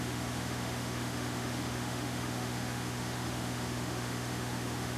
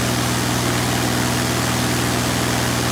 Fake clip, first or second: first